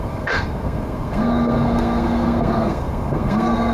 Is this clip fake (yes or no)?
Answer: yes